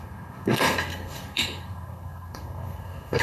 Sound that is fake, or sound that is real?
fake